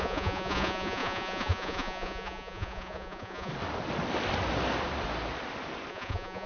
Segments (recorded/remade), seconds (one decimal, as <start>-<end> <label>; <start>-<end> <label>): 0.0-3.5 remade; 3.5-5.9 recorded; 5.9-6.5 remade